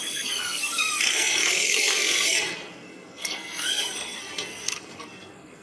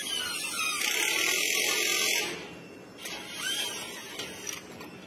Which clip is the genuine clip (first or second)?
second